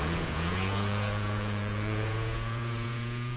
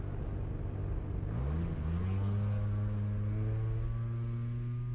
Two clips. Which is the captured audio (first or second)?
second